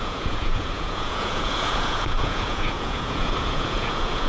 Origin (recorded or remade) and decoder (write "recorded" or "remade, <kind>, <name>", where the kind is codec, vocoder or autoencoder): remade, vocoder, Vocos